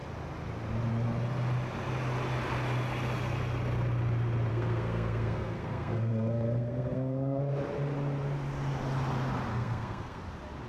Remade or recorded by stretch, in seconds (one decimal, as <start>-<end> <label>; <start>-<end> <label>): 0.0-4.5 recorded; 4.5-7.4 remade; 7.4-9.5 recorded; 9.5-10.2 remade; 10.2-10.7 recorded